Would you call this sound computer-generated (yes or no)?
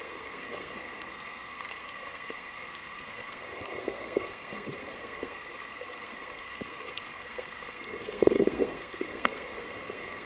yes